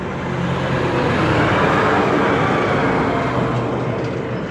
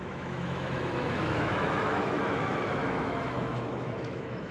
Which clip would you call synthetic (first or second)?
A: second